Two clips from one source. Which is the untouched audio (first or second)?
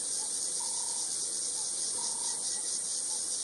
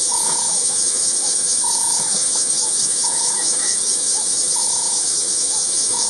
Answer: first